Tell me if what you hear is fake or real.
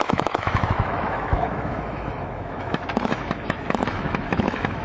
fake